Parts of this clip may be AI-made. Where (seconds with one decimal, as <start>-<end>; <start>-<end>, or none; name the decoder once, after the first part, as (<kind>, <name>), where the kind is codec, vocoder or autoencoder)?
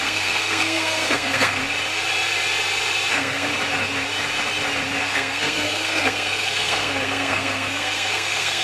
0.0-1.6 (codec, SNAC); 3.1-3.5; 5.0-8.6